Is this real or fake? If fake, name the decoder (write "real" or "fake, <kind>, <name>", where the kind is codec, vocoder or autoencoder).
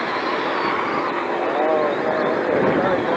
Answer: real